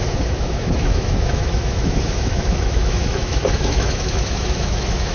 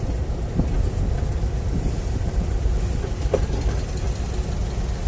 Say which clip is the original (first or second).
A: second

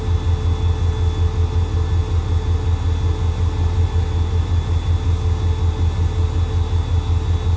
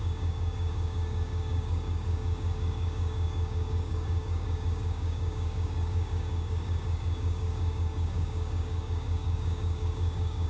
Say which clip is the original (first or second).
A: first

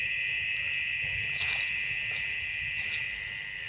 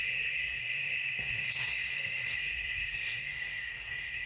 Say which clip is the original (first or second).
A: first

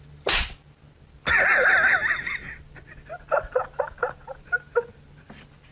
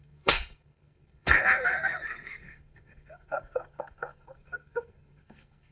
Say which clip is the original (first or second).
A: first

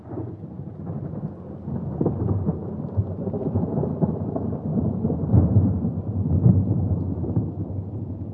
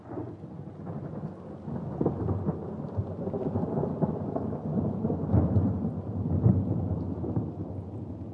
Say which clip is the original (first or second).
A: second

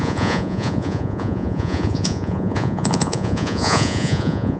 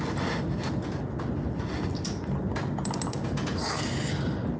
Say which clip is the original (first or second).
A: second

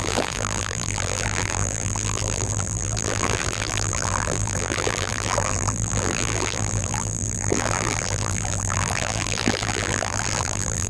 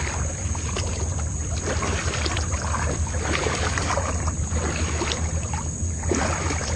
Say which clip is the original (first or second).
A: second